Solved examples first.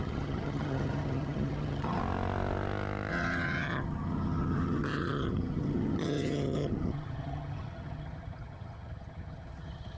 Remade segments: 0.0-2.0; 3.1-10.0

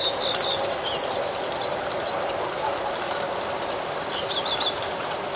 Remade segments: none

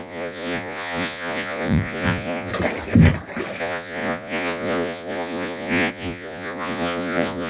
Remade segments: 0.0-2.5; 3.6-7.5

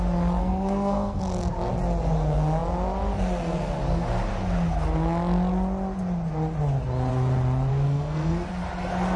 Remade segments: 0.4-1.2; 7.7-8.5

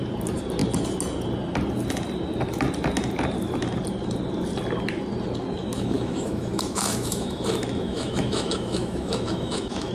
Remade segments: 5.7-9.9

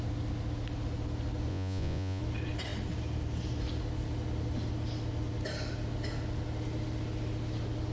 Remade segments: 1.5-2.2

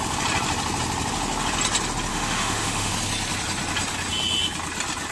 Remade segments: 2.1-2.9

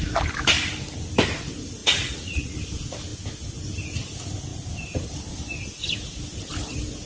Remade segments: 1.8-2.6